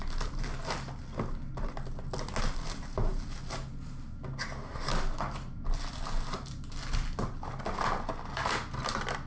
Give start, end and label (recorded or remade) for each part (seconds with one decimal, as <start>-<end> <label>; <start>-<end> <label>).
0.0-9.3 recorded